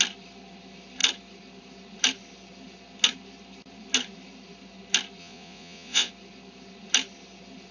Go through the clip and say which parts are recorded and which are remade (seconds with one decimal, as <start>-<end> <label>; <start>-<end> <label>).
0.0-5.2 recorded; 5.2-6.1 remade; 6.1-7.7 recorded